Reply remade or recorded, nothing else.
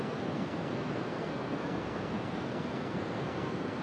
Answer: remade